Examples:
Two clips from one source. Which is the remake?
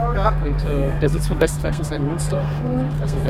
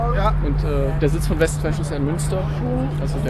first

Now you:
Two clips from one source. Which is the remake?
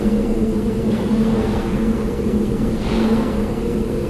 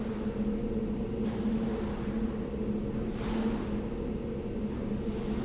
first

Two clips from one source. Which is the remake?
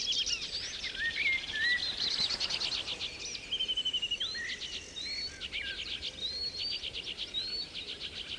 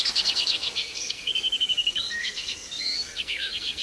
second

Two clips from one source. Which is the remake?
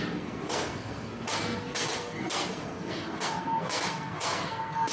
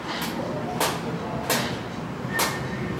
first